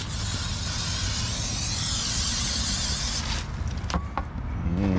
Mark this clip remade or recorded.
recorded